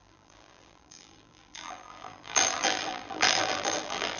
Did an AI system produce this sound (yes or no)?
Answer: yes